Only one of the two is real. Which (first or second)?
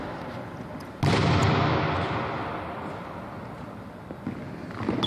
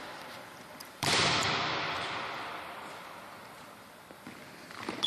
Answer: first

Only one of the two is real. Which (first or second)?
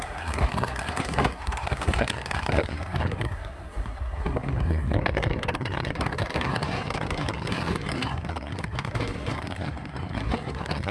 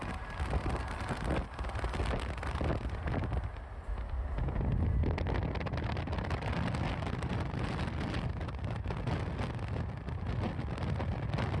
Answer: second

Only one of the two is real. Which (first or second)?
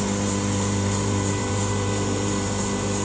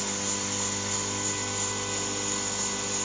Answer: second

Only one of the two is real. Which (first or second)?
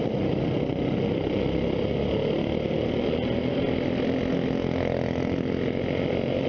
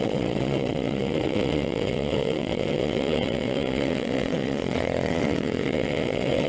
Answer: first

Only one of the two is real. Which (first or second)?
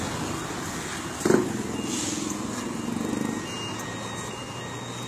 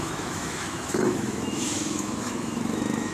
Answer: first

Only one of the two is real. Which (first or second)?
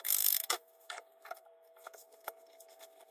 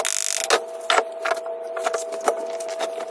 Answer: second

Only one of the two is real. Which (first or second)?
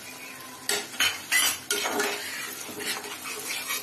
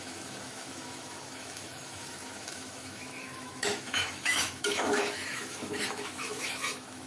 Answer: first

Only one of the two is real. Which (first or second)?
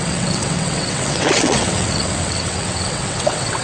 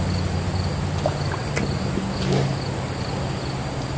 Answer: second